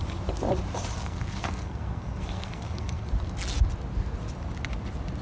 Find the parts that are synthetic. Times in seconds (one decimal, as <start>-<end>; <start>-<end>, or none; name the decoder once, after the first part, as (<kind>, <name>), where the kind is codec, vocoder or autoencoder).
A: 1.0-3.1 (codec, SNAC)